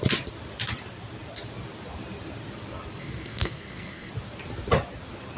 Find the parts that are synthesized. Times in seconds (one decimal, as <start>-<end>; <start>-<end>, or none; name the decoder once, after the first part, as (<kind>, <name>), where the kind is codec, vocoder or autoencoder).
3.0-4.1 (codec, SNAC)